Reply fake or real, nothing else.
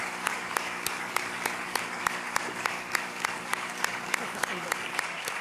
fake